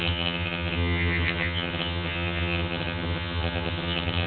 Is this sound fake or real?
fake